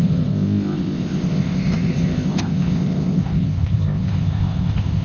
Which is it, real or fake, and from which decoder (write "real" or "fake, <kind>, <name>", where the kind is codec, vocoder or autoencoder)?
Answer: fake, codec, ZipCodec